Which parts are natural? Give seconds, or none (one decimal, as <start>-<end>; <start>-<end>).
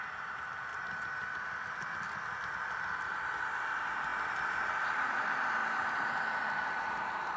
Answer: 0.0-0.7; 1.5-5.6